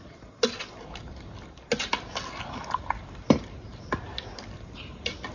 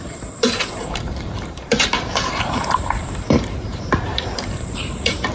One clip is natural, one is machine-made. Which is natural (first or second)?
first